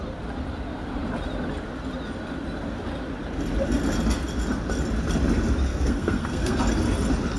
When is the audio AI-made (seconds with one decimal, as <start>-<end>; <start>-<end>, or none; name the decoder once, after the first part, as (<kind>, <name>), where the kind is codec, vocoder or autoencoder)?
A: 5.7-6.6 (codec, SNAC)